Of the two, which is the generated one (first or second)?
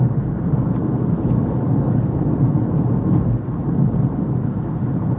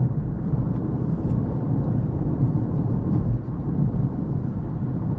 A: second